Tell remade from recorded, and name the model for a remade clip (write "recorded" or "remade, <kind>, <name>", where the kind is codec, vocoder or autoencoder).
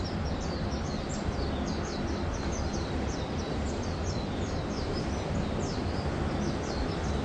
remade, vocoder, BigVGAN v2